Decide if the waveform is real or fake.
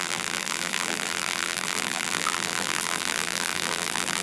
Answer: fake